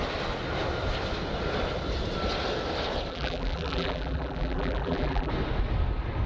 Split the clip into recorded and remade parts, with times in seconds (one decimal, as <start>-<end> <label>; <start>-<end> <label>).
0.0-3.1 recorded; 3.1-5.3 remade; 5.3-6.3 recorded